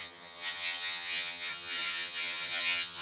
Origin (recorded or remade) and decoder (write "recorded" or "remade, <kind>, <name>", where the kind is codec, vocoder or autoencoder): remade, vocoder, HiFi-GAN